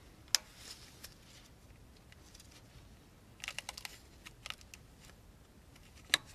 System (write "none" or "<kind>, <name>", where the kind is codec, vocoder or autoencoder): none